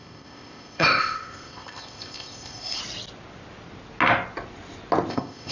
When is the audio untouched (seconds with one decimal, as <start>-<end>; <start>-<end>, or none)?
2.8-5.1